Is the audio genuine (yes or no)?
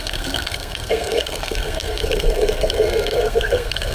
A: no